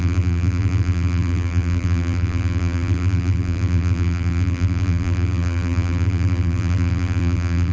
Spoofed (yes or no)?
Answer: yes